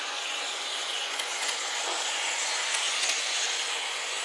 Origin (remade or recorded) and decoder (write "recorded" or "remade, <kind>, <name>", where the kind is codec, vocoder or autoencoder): remade, vocoder, Vocos